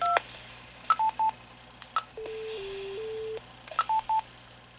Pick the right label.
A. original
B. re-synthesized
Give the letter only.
A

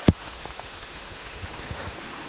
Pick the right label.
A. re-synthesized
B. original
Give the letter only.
A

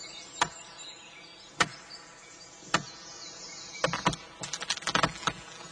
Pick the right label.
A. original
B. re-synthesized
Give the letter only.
A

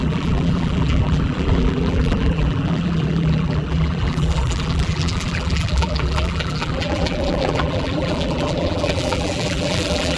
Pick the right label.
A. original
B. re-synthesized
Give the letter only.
B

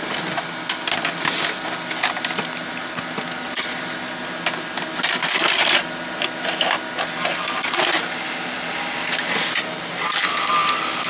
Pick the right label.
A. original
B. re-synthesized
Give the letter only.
A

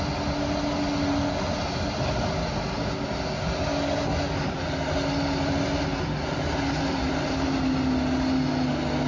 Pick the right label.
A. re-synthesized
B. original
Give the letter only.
B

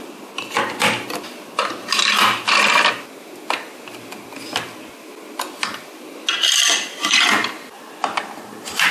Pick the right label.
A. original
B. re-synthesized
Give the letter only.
A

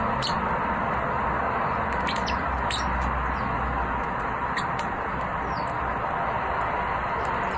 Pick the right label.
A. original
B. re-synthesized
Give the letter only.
A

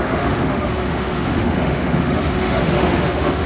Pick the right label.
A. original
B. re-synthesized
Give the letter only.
B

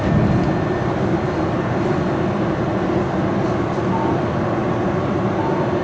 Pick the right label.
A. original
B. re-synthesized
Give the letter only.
A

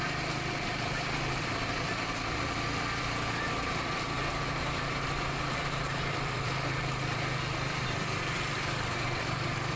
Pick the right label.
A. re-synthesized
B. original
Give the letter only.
A